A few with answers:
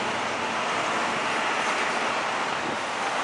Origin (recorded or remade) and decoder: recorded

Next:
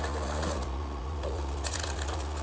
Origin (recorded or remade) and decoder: remade, vocoder, Vocos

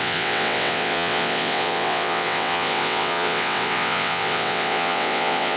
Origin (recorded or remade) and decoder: remade, vocoder, WaveNeXt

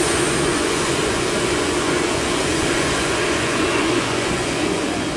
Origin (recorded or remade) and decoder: remade, vocoder, Vocos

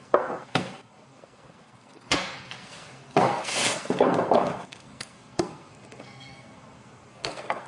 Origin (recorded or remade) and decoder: remade, codec, SNAC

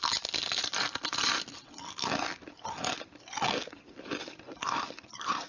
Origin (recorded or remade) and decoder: recorded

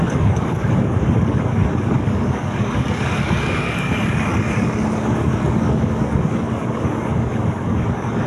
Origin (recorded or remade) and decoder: remade, codec, DAC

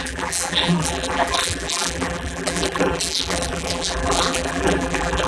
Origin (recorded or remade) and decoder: remade, vocoder, BigVGAN v2